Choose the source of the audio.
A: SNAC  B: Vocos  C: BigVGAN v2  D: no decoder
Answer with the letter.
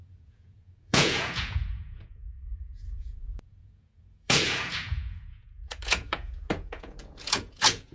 B